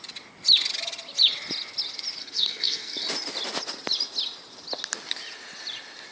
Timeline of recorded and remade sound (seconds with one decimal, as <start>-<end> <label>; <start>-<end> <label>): 0.0-2.2 recorded; 2.2-3.1 remade; 3.1-6.1 recorded